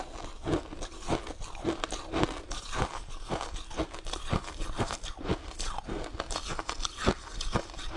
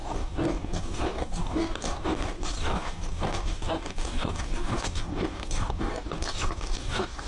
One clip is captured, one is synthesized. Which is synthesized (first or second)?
second